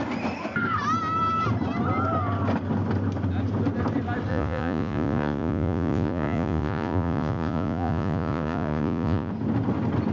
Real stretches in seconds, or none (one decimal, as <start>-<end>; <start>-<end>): 0.0-4.3; 9.3-10.1